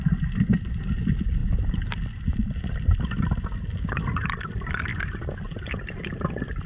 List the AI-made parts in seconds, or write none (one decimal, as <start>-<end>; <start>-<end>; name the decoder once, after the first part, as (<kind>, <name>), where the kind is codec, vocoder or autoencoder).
none